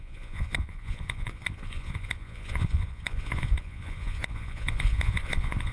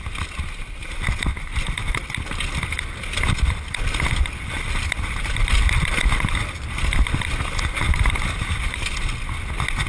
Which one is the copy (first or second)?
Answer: first